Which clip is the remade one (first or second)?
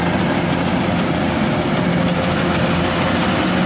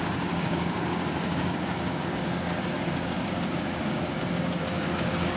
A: second